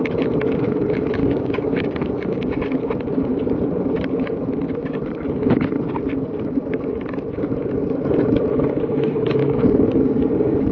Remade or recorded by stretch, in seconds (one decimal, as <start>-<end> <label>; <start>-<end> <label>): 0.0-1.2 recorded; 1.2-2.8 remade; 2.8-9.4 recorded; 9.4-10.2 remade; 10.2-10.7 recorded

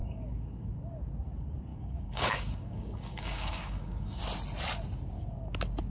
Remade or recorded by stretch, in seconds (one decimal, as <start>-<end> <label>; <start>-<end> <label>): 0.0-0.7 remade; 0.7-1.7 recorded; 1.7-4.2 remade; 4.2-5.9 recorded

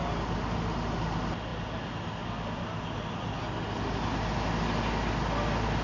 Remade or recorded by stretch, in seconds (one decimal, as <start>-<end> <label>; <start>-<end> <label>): 0.0-5.8 recorded

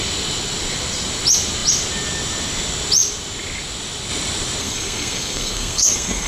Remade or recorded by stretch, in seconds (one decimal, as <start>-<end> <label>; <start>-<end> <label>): 0.0-4.6 recorded; 4.6-6.3 remade

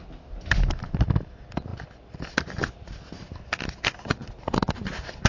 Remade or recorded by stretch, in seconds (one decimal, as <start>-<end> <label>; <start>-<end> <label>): 0.0-5.3 recorded

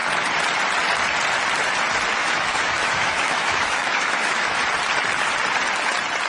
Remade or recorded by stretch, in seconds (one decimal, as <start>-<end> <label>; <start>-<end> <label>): 0.0-2.2 recorded; 2.2-4.6 remade; 4.6-6.3 recorded